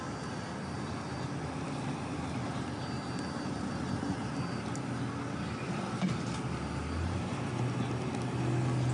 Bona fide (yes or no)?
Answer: yes